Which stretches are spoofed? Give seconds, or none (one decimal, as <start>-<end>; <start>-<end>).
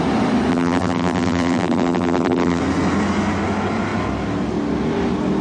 0.5-2.6